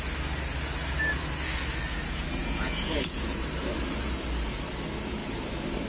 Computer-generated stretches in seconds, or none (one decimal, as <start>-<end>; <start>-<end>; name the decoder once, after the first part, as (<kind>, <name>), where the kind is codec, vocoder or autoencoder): 2.4-3.4 (vocoder, Vocos)

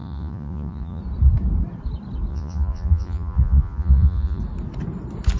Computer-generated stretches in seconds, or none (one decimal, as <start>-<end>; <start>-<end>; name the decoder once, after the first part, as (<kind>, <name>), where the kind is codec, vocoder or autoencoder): 0.0-1.0 (vocoder, Vocos); 2.3-4.4

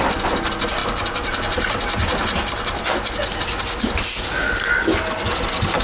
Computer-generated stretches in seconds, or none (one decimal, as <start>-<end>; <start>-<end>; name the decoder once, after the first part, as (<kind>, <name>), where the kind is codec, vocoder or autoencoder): none

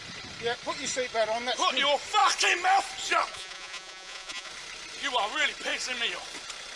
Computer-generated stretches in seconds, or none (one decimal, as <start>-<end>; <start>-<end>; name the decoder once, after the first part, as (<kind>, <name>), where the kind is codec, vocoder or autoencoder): 3.3-4.5 (vocoder, Vocos)

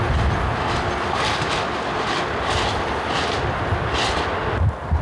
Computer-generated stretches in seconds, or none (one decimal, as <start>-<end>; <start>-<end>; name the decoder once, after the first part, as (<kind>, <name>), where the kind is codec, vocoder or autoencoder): none